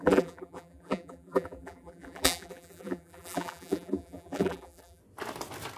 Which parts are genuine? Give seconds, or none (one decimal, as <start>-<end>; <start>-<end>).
5.0-5.8